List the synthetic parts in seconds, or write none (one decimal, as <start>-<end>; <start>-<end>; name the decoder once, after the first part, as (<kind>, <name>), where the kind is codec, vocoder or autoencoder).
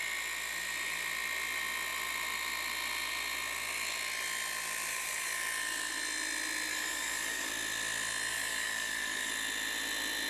4.9-5.4 (codec, DAC); 6.7-7.5; 8.3-9.3